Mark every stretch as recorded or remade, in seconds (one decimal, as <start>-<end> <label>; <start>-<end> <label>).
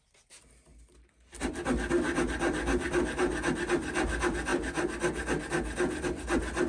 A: 0.0-6.7 recorded